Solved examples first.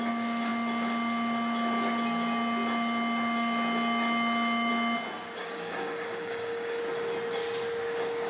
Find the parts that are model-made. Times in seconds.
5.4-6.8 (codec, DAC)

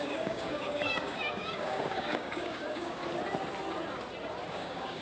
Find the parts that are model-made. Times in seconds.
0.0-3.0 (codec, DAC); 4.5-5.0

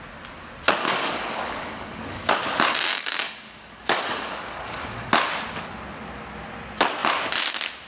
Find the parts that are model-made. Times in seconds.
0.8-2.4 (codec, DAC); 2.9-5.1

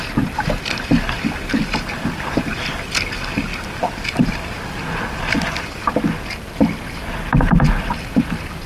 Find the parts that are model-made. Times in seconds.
none